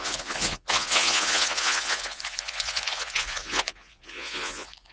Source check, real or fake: fake